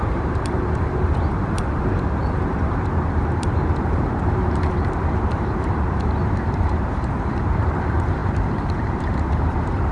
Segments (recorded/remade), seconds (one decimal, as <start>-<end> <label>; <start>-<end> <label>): 0.0-9.9 remade